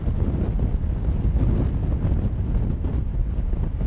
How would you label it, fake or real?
real